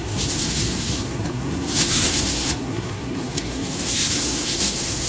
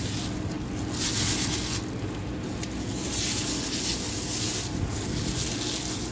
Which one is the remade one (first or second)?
first